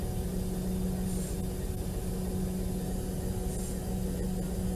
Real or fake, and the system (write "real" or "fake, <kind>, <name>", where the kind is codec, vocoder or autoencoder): real